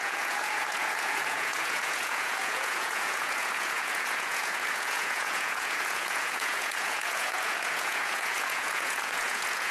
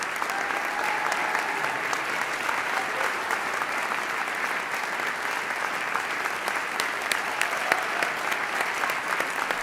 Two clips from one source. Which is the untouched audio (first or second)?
second